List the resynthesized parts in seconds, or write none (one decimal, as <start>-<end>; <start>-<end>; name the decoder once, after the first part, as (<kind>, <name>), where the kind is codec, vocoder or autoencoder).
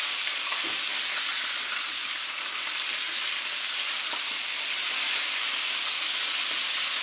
none